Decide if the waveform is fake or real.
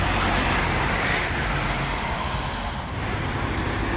real